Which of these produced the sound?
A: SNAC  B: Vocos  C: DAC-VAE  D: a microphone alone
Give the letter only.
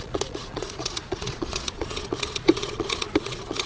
B